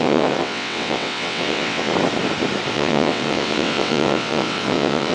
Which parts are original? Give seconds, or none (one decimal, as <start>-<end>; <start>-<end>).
1.9-2.7